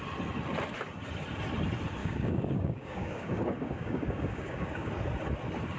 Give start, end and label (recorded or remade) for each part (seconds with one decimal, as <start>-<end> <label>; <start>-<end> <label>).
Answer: 0.0-2.0 recorded; 2.0-4.9 remade; 4.9-5.8 recorded